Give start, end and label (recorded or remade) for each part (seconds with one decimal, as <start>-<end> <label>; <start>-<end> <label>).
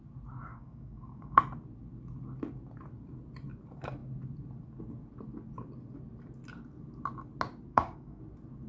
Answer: 0.0-0.5 recorded; 0.5-1.4 remade; 1.4-7.7 recorded; 7.7-8.2 remade; 8.2-8.7 recorded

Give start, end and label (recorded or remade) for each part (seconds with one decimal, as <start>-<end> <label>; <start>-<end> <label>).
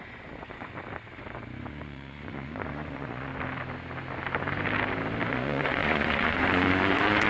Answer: 0.0-0.7 remade; 0.7-1.7 recorded; 1.7-3.3 remade; 3.3-5.3 recorded; 5.3-7.3 remade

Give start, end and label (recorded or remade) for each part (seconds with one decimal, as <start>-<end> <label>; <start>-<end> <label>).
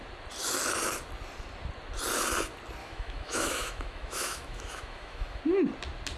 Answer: 0.0-2.8 recorded; 2.8-5.4 remade; 5.4-6.2 recorded